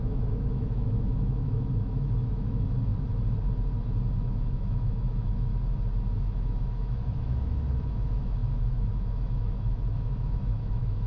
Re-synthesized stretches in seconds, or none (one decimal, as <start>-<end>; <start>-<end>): 0.0-2.9; 4.2-5.5; 6.2-11.1